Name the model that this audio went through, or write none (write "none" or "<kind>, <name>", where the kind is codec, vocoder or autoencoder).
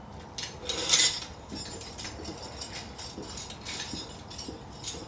none